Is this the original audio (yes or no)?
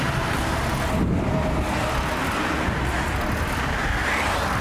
no